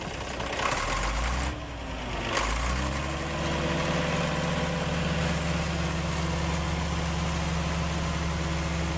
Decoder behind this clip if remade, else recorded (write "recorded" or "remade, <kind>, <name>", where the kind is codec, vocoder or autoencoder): recorded